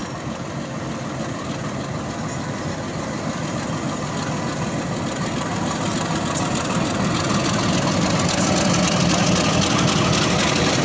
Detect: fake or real real